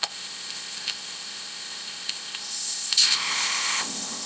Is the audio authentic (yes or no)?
no